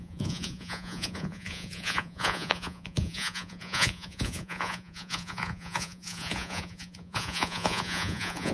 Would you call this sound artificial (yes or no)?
yes